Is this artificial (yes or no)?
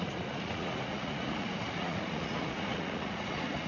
yes